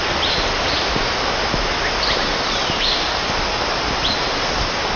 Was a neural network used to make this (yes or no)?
no